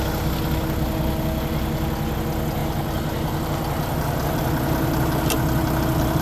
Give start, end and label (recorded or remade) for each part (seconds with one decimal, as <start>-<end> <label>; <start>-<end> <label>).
0.0-6.2 recorded